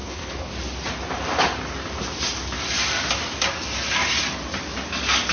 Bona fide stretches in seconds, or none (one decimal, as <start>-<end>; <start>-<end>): 0.5-5.3